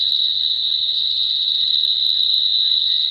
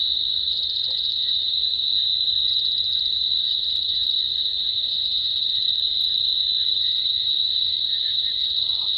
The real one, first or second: first